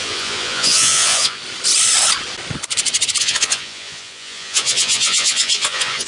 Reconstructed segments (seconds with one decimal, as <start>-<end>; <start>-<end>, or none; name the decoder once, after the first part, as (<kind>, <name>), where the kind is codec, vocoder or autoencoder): 0.0-1.4 (vocoder, Vocos); 3.2-6.1